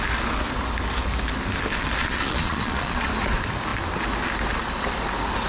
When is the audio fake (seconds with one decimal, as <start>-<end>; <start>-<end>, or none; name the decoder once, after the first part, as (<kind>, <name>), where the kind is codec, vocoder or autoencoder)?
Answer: 2.0-3.1 (vocoder, Vocos)